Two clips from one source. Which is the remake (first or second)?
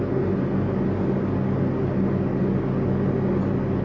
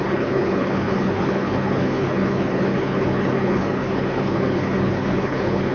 second